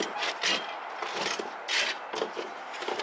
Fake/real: real